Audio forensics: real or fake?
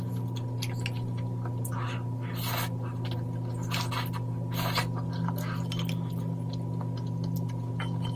real